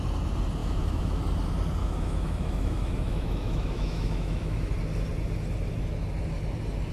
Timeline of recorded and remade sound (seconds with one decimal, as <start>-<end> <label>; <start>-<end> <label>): 0.0-0.6 recorded; 0.6-1.2 remade; 1.2-1.8 recorded; 1.8-4.7 remade; 4.7-6.9 recorded